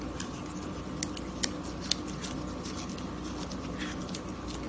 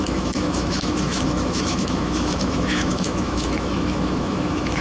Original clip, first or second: first